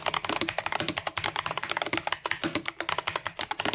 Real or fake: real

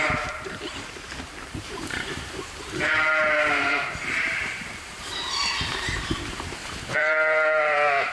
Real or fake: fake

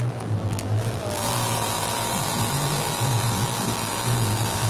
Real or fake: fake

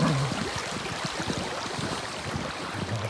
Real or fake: real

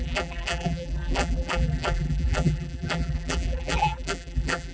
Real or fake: fake